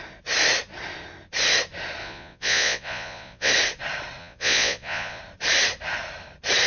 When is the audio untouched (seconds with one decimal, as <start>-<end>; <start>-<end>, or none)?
0.0-2.0; 3.5-4.2; 5.2-6.7